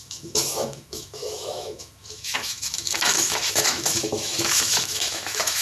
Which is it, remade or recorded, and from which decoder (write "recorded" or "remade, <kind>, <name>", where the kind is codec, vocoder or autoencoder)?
remade, autoencoder, DAC-VAE